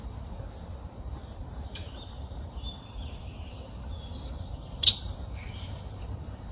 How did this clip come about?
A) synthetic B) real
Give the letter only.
A